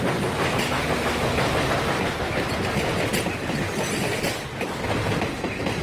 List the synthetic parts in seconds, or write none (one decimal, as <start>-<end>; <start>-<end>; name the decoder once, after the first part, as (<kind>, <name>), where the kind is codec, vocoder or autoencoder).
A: none